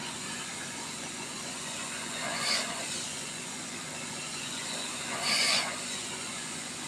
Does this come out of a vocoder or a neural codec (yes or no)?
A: yes